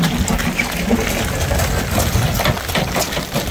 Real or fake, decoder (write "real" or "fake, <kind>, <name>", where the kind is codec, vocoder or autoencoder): real